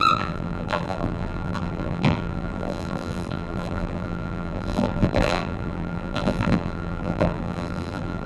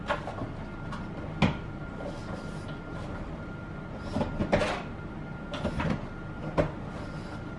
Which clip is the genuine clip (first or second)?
second